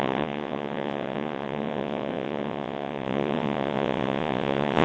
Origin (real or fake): fake